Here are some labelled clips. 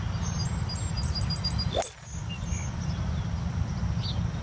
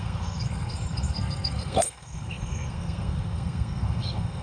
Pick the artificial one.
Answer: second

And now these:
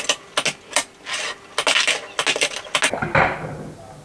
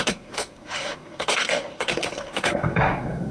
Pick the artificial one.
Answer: second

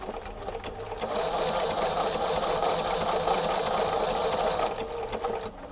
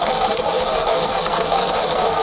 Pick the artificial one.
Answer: second